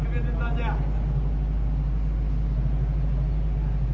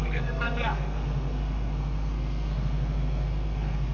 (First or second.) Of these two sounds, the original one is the first